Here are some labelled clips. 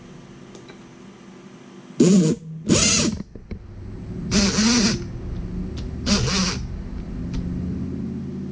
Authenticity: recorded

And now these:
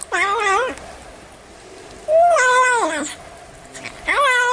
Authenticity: recorded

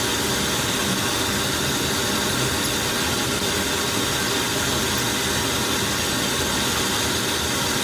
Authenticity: recorded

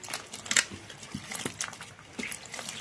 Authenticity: recorded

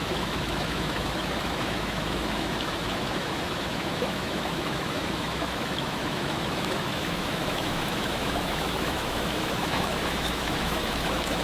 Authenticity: remade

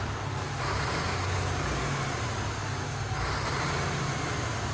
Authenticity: recorded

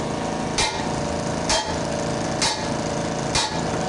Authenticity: recorded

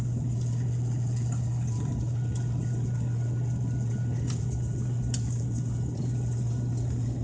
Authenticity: recorded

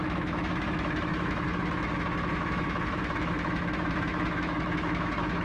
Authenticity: remade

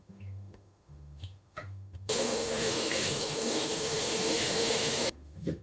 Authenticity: remade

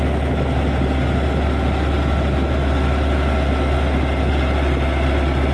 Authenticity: recorded